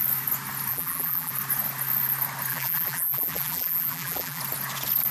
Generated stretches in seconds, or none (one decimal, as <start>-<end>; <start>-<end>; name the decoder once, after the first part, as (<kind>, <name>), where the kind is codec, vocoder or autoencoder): 0.7-1.3 (vocoder, BigVGAN v2); 2.5-4.4